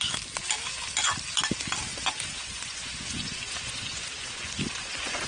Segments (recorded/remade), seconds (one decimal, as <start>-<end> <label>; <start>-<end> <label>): 0.0-1.9 recorded; 1.9-5.3 remade